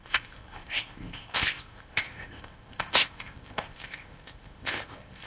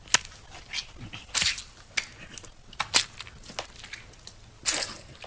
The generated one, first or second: first